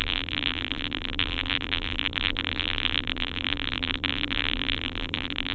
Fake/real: fake